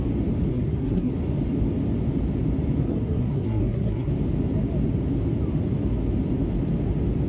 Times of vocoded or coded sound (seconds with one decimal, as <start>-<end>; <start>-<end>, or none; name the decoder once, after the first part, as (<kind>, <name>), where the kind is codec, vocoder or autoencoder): 0.5-1.1 (codec, SNAC); 2.8-4.1

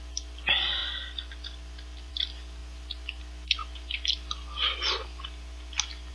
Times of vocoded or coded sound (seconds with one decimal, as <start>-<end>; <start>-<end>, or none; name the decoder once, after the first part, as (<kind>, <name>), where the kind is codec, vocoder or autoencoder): 0.8-2.1 (vocoder, BigVGAN v2)

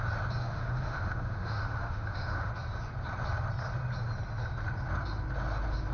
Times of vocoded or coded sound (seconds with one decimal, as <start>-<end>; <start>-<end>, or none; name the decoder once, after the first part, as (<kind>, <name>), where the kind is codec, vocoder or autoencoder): 0.4-2.5 (autoencoder, DAC-VAE)